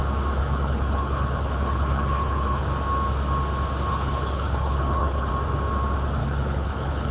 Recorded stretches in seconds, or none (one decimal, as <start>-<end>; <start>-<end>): 0.0-0.4; 2.6-3.9; 5.3-6.2

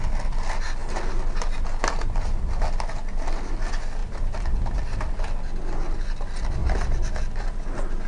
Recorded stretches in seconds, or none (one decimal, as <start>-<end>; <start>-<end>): 0.0-8.1

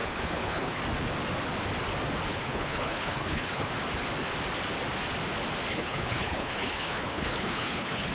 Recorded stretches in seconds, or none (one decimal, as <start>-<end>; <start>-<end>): 0.8-2.3; 3.7-5.7

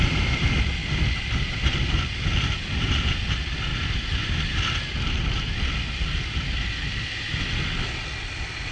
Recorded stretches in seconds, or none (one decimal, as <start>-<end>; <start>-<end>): 0.0-8.7

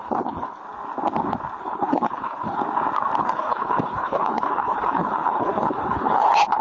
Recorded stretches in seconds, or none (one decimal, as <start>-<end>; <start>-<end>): 0.6-1.6; 2.6-3.2

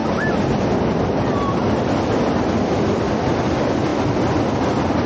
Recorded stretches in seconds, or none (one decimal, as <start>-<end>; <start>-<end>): 0.0-5.1

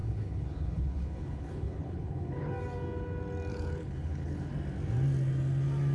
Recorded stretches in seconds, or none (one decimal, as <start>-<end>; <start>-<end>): 2.5-3.5; 4.5-5.9